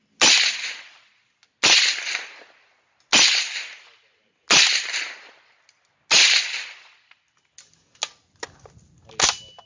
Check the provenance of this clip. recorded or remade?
recorded